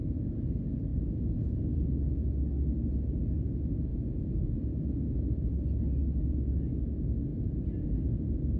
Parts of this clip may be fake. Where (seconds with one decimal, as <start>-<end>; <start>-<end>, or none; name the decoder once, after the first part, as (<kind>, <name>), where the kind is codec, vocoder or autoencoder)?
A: 0.9-1.8 (vocoder, Vocos); 3.9-5.5; 7.3-7.9